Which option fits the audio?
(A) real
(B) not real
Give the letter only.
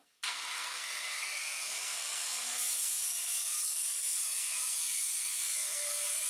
B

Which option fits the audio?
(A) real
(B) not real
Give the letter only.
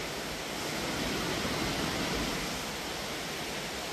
A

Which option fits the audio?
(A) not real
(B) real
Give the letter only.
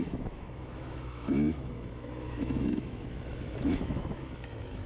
A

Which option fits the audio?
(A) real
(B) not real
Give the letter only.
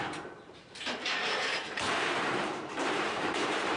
B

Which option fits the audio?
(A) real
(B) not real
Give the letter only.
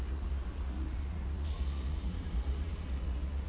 B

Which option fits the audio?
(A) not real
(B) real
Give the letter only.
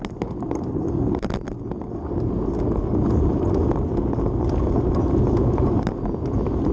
B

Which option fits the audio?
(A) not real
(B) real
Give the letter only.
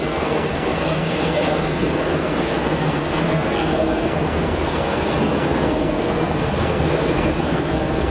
A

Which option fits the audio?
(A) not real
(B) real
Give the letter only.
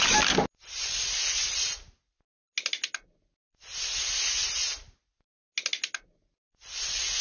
B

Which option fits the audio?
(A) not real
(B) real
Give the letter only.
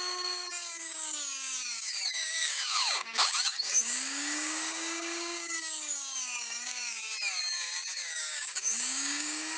A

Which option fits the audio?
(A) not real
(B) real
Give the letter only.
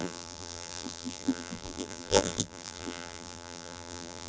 A